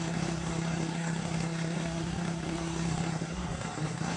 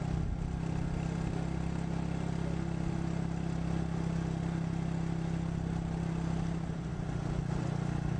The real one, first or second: second